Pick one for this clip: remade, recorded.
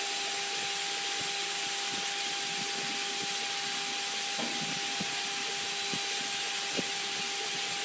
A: recorded